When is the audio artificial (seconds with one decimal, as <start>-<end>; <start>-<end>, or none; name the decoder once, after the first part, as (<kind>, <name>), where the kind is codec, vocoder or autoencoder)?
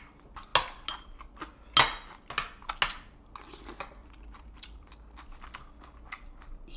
4.0-4.9 (vocoder, BigVGAN v2)